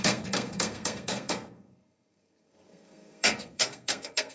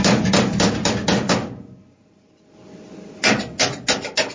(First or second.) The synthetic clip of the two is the first